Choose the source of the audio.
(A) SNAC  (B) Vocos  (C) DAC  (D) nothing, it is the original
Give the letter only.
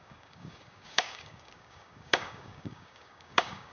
C